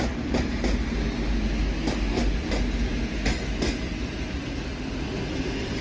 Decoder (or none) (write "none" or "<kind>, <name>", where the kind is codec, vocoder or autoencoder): none